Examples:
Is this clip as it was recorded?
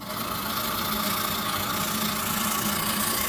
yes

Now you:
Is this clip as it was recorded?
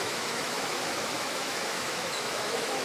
no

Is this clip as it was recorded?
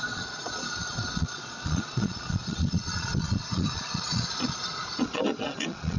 no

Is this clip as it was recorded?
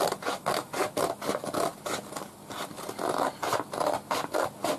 yes